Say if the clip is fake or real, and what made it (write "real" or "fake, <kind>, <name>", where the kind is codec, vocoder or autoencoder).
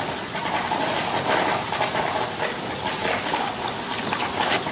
real